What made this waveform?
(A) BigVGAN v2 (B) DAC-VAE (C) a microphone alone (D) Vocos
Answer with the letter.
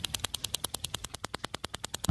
C